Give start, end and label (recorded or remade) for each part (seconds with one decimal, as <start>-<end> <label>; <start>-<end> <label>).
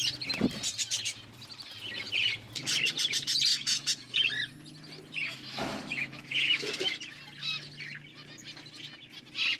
0.0-3.5 recorded; 3.5-4.3 remade; 4.3-5.3 recorded; 5.3-6.9 remade; 6.9-9.6 recorded